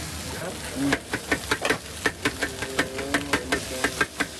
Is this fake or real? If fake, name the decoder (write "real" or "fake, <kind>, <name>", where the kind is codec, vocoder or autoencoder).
real